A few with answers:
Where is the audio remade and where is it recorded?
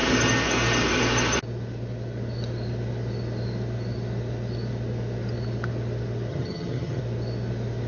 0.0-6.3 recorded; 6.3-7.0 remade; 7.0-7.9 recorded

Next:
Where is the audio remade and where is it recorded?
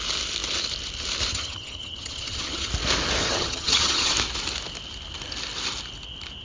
0.0-1.3 recorded; 1.3-2.7 remade; 2.7-3.2 recorded; 3.2-4.1 remade; 4.1-6.4 recorded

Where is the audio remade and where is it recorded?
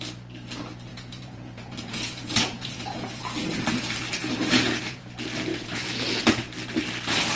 0.0-0.9 recorded; 0.9-3.2 remade; 3.2-4.2 recorded; 4.2-5.0 remade; 5.0-5.5 recorded; 5.5-6.2 remade; 6.2-7.4 recorded